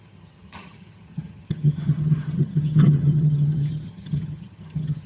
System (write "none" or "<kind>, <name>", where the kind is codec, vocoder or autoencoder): vocoder, HiFi-GAN